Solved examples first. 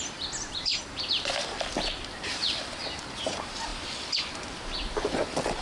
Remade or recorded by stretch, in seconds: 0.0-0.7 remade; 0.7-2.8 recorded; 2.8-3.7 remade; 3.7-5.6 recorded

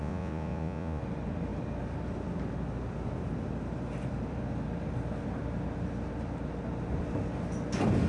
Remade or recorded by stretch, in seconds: 0.0-1.0 remade; 1.0-8.1 recorded

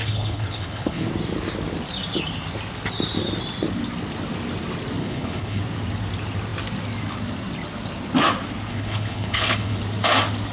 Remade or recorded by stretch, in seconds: 0.0-1.1 remade; 1.1-5.0 recorded; 5.0-5.6 remade; 5.6-8.7 recorded; 8.7-9.8 remade; 9.8-10.5 recorded